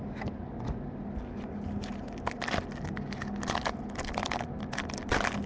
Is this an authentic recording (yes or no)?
yes